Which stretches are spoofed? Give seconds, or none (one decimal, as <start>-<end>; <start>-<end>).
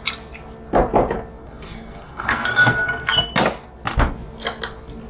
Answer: 1.4-3.3